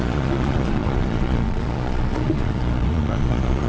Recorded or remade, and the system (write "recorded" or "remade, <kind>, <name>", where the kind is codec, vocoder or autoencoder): remade, vocoder, Vocos